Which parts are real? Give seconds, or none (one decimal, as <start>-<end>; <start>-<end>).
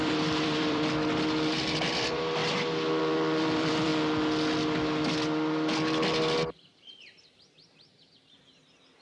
2.4-3.0; 3.9-7.5